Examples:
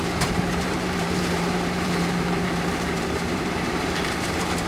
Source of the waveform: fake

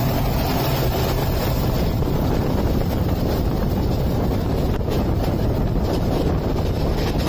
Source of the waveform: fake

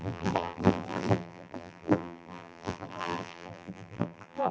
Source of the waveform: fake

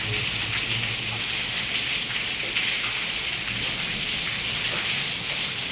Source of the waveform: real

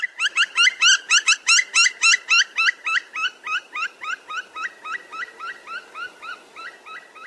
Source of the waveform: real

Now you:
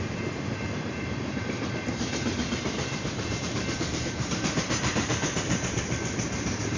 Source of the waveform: fake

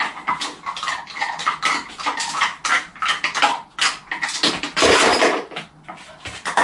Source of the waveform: real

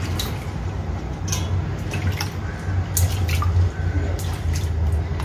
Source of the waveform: real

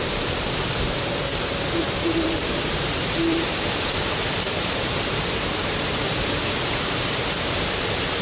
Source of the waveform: fake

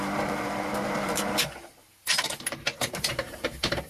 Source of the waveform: fake